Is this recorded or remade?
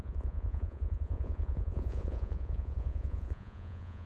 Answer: remade